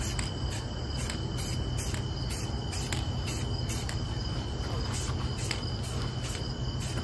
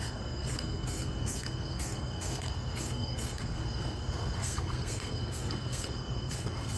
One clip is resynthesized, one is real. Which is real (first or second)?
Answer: first